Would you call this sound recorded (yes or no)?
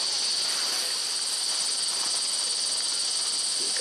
yes